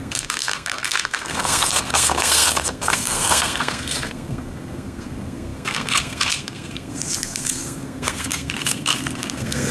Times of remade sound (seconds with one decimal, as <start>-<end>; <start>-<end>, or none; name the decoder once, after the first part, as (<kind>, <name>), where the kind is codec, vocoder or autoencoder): 0.0-9.7 (codec, SNAC)

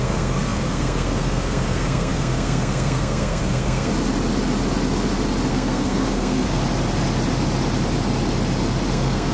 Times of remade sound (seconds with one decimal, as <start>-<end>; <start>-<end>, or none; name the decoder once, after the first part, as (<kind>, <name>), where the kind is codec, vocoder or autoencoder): 0.0-3.9 (codec, SNAC); 5.5-6.6; 8.9-9.3

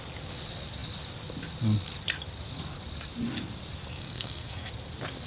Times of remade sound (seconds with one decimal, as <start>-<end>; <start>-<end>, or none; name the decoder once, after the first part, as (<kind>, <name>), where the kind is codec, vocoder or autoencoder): 3.9-4.7 (codec, SNAC)

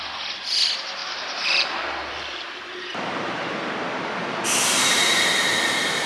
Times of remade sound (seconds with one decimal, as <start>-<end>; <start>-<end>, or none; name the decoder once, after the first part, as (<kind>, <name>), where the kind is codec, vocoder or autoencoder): 1.0-3.7 (vocoder, BigVGAN v2); 4.2-5.3

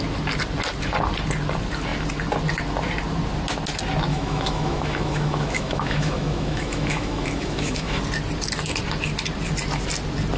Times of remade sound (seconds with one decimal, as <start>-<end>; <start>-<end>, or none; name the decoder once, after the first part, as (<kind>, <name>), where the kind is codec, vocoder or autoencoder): 4.1-8.0 (autoencoder, DAC-VAE)

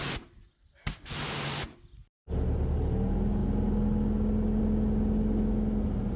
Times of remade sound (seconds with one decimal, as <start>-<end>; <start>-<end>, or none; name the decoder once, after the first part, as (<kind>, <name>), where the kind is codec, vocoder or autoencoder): none